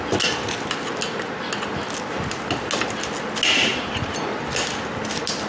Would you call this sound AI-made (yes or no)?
no